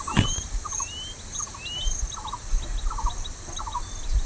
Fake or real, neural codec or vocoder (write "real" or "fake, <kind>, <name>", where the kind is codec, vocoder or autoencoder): real